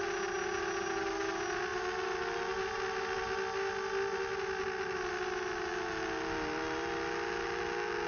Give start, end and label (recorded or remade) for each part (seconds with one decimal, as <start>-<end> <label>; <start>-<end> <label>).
0.0-8.1 recorded